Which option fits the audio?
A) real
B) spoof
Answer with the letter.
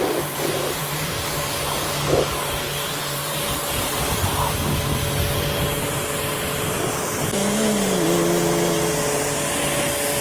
A